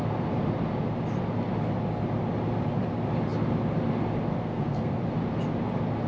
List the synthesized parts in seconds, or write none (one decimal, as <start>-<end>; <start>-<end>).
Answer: 4.3-5.0